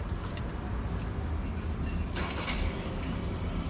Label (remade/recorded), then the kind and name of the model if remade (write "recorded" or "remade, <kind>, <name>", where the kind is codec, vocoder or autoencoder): recorded